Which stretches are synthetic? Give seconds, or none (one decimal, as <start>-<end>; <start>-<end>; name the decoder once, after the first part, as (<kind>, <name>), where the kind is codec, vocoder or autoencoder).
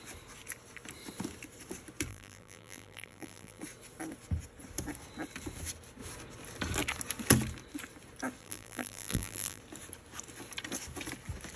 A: 2.1-3.6 (vocoder, BigVGAN v2); 8.4-9.6